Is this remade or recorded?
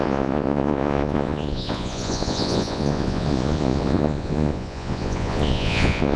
remade